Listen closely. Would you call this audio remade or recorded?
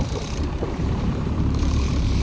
remade